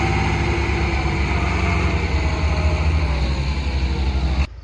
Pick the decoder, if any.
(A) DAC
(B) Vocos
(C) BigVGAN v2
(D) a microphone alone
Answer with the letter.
D